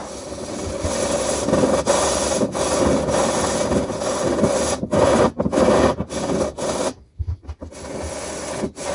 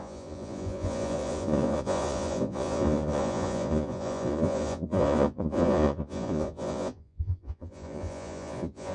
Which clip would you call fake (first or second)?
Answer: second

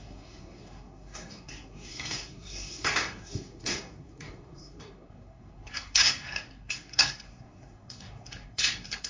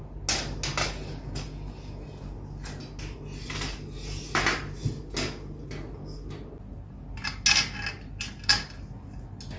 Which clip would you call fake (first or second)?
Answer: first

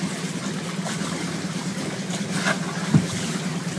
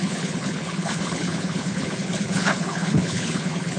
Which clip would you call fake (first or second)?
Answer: second